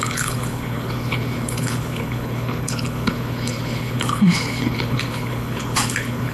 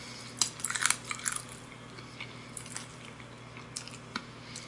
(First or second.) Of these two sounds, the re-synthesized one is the first